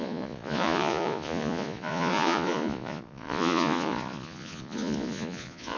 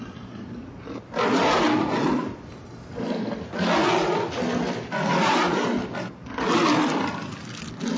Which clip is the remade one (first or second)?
first